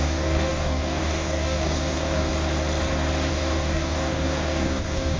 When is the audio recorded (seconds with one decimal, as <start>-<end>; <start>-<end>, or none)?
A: 2.3-3.3